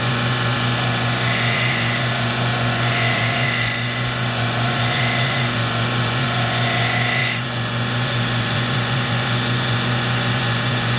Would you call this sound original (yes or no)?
no